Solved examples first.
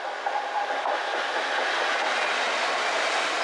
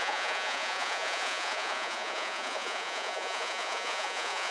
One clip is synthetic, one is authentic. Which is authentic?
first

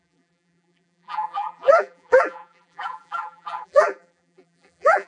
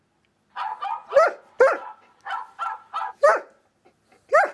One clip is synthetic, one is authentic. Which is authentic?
second